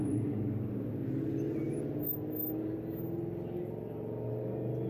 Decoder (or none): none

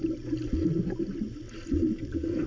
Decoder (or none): none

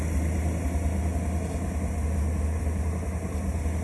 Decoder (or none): none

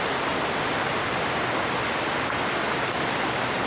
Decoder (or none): none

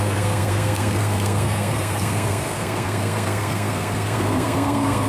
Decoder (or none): codec, SNAC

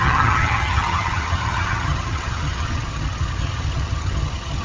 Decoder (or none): vocoder, HiFi-GAN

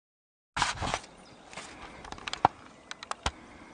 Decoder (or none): none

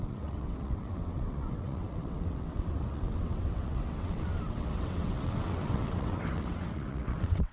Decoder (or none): vocoder, WaveNeXt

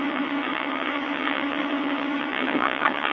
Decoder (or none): vocoder, WaveNeXt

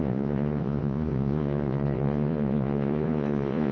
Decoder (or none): vocoder, Vocos